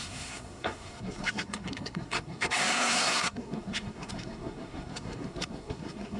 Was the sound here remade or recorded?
remade